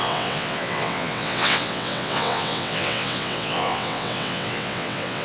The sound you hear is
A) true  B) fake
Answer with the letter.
B